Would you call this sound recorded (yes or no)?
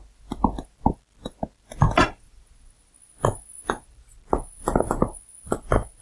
yes